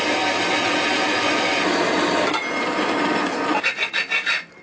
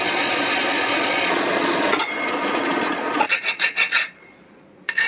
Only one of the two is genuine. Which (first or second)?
first